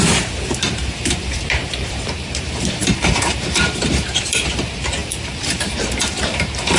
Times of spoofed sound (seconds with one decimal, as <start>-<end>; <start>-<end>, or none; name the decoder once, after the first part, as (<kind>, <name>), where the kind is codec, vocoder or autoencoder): 0.0-6.8 (vocoder, BigVGAN v2)